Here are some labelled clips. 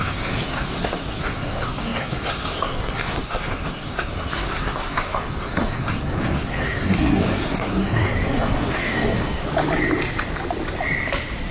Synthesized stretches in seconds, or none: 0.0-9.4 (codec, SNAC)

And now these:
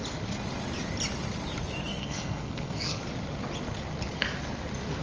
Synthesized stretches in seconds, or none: 1.9-3.0 (codec, SNAC)

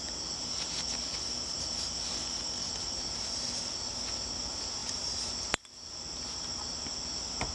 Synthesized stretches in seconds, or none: none

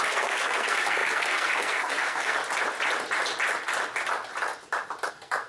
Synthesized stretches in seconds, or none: 0.0-2.4 (codec, SNAC); 5.1-5.5

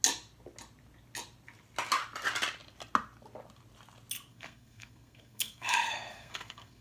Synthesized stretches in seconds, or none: 4.3-6.8 (codec, SNAC)

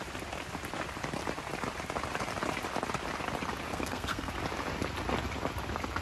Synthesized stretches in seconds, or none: 3.7-4.3 (codec, SNAC)